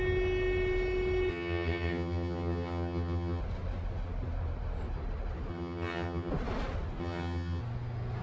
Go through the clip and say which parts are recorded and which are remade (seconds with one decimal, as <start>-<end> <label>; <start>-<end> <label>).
0.0-1.3 recorded; 1.3-3.4 remade; 3.4-5.5 recorded; 5.5-6.3 remade; 6.3-7.0 recorded; 7.0-7.6 remade; 7.6-8.2 recorded